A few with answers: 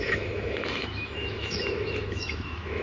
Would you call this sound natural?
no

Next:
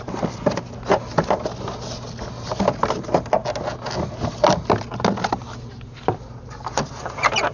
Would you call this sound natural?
yes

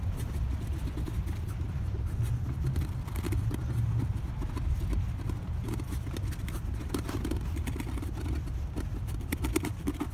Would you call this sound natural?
yes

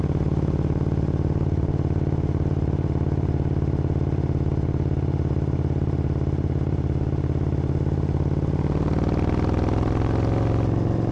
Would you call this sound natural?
yes